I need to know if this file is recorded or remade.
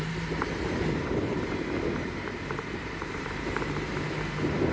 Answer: remade